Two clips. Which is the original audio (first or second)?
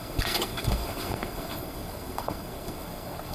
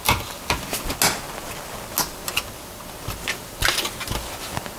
second